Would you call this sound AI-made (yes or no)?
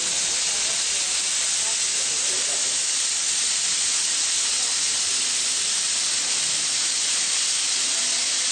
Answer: no